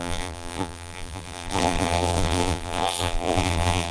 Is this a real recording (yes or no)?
no